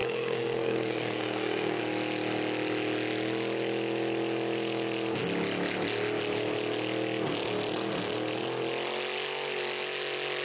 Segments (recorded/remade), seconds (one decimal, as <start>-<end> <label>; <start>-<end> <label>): 0.0-1.8 remade; 1.8-10.4 recorded